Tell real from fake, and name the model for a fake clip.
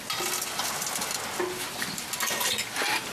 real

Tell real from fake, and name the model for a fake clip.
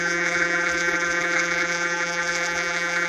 fake, vocoder, BigVGAN v2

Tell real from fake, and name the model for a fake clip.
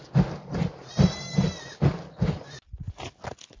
real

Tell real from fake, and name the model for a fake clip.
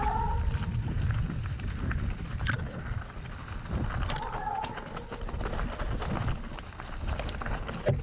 real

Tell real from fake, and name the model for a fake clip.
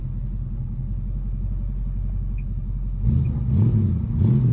real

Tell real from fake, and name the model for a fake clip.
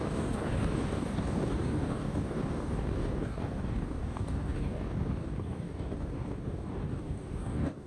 fake, codec, DAC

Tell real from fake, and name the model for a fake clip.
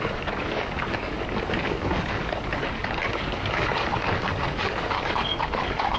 fake, codec, DAC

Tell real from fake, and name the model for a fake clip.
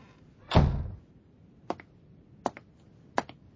real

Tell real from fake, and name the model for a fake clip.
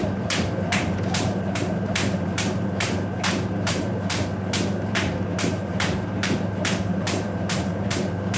fake, vocoder, BigVGAN v2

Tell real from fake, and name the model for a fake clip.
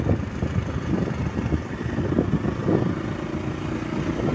real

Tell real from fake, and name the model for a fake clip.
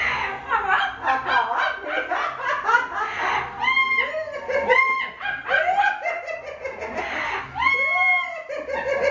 real